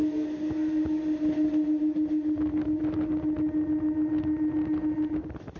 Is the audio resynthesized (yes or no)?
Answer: no